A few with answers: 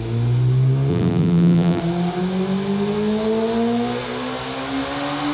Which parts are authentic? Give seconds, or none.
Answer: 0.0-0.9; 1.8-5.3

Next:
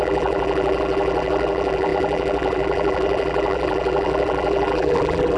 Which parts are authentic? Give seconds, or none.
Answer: none

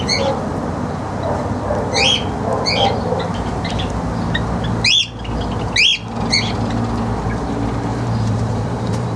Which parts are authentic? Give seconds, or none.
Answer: 0.0-7.9

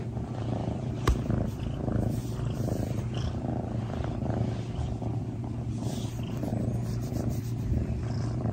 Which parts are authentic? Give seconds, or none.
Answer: 6.5-7.1

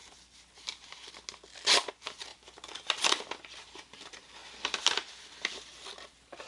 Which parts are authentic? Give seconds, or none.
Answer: 0.0-1.9; 2.3-3.6; 4.4-6.5

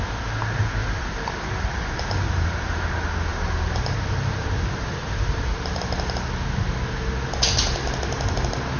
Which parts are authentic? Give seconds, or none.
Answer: 0.0-0.8; 2.8-3.3; 5.8-8.8